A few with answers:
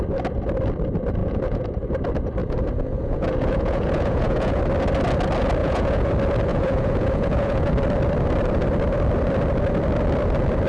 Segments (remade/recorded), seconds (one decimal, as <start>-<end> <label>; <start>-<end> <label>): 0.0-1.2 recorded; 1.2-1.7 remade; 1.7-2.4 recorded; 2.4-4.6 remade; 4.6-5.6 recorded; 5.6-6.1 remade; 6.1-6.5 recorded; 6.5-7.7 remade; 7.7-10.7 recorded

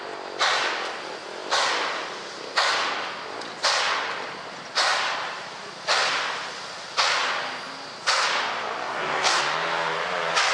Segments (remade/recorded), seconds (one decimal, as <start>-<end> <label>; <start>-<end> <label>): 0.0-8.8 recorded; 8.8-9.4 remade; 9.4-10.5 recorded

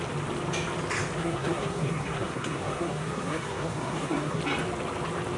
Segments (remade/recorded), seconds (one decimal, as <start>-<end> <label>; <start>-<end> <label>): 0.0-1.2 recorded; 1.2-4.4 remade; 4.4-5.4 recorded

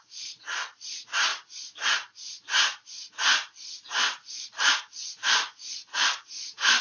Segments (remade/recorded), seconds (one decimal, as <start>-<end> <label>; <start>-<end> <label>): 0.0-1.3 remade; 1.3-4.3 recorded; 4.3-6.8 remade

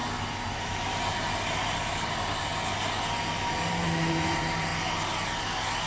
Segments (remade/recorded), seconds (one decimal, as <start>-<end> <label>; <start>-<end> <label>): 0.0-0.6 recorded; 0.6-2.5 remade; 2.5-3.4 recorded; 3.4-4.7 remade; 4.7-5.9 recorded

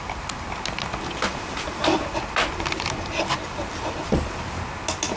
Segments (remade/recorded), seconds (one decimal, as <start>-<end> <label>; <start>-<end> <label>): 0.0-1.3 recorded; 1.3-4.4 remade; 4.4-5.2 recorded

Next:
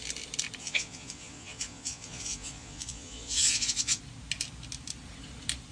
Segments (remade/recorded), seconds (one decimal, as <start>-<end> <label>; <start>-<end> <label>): 0.0-0.6 recorded; 0.6-4.0 remade; 4.0-5.7 recorded